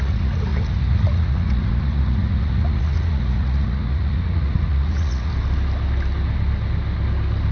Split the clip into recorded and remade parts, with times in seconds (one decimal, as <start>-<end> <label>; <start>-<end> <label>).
0.0-5.3 remade; 5.3-7.5 recorded